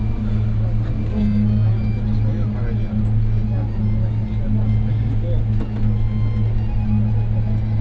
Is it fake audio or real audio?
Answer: real